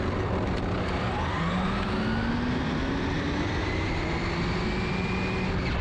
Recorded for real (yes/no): yes